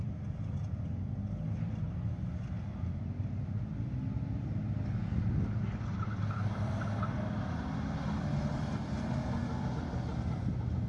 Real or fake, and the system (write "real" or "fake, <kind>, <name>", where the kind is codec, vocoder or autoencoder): real